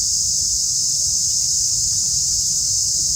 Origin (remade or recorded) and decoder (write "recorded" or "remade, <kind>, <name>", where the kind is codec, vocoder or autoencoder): remade, vocoder, BigVGAN v2